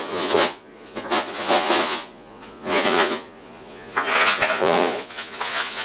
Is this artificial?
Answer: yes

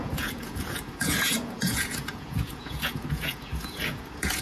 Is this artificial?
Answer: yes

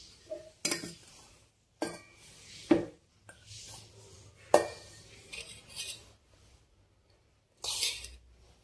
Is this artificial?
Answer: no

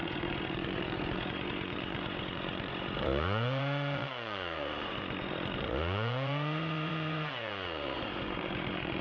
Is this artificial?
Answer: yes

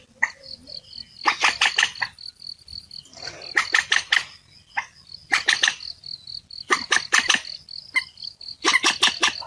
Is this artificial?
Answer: no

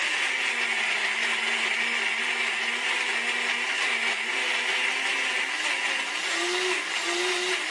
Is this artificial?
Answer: no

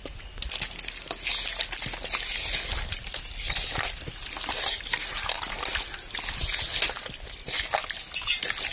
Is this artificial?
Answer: no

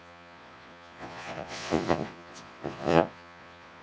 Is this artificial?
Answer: yes